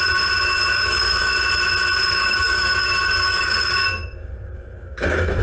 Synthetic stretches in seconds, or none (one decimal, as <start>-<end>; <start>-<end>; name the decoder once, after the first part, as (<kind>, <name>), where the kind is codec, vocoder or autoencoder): 0.7-1.3 (codec, DAC); 2.2-5.4